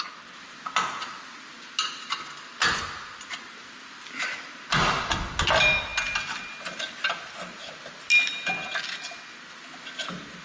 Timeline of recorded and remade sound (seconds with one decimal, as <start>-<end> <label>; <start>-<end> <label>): 0.0-10.4 recorded